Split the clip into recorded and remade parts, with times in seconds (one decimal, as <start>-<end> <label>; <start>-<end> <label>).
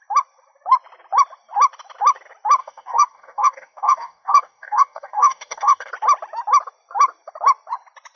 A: 0.0-2.6 recorded; 2.6-5.9 remade; 5.9-8.2 recorded